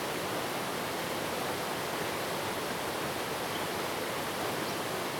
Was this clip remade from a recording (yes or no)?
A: no